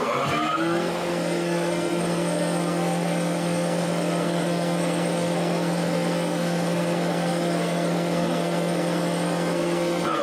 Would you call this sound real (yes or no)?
no